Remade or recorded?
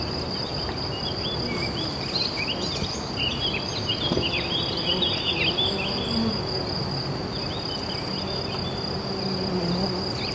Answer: recorded